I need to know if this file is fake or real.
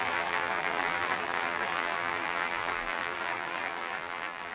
fake